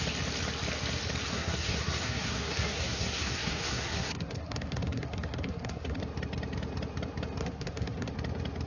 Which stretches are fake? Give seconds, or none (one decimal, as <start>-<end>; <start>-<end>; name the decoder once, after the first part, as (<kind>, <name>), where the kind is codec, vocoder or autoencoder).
1.3-6.0 (codec, SNAC); 7.4-8.1

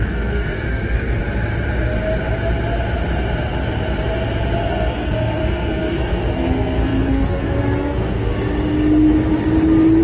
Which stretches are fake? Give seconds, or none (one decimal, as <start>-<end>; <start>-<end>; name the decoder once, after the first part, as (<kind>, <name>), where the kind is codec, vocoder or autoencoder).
0.0-1.2 (codec, SNAC); 4.7-8.3

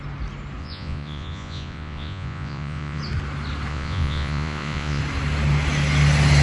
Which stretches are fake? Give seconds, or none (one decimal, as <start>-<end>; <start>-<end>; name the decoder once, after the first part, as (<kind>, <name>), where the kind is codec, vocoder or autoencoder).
0.6-3.0 (vocoder, Vocos); 3.7-5.0

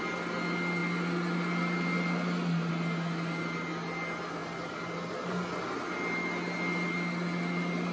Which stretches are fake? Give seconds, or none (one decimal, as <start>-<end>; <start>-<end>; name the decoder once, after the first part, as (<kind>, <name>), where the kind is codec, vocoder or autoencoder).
none

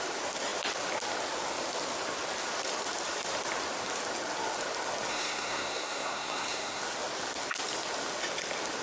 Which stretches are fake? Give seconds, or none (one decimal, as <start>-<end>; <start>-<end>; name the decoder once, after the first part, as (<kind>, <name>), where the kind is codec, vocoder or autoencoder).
5.1-6.8 (codec, SNAC)

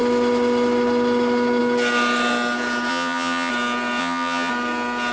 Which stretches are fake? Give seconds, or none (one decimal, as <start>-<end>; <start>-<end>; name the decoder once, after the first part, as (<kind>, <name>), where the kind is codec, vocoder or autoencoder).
2.9-3.5 (vocoder, HiFi-GAN); 4.0-4.5

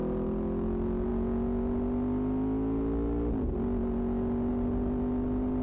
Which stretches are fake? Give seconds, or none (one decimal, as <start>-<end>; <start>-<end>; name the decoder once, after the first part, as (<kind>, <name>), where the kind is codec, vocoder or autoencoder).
none